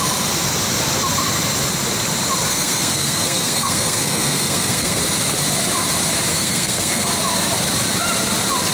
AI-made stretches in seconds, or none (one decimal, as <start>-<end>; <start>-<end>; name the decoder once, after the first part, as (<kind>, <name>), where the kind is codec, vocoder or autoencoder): 2.5-5.0 (codec, SNAC); 6.3-7.1